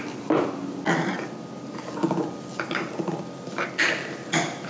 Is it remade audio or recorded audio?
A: recorded